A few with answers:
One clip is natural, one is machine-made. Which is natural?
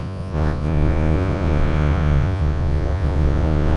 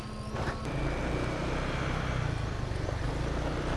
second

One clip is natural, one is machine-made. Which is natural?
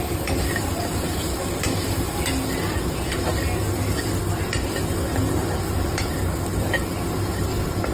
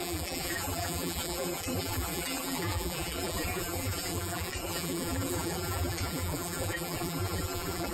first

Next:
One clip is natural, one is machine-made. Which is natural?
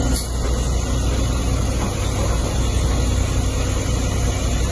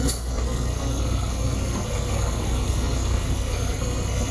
first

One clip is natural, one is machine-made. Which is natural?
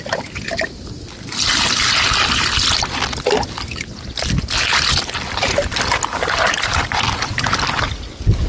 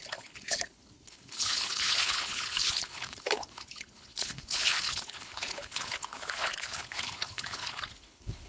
first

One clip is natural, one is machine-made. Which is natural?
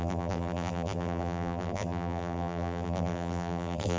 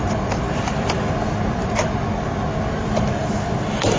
second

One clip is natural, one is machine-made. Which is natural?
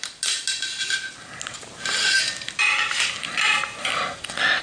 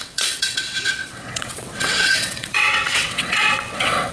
first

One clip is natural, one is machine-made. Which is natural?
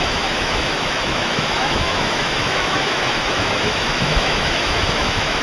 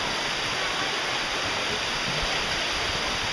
second